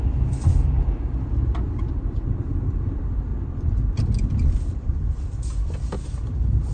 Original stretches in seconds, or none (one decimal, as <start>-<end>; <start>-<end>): 3.3-4.0